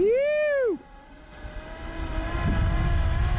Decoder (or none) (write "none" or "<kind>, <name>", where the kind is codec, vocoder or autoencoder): none